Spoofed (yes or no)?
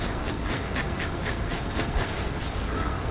yes